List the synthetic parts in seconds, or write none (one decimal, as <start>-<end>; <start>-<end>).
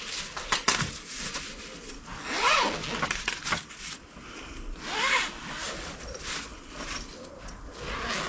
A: none